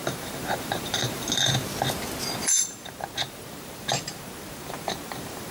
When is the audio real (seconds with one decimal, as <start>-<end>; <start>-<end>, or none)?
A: 1.3-2.4